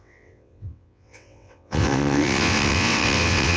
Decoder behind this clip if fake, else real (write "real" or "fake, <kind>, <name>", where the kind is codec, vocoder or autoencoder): fake, vocoder, WaveNeXt